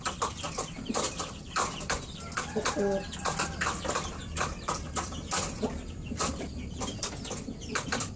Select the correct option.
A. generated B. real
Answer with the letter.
A